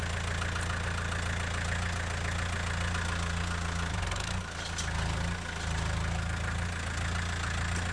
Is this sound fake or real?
real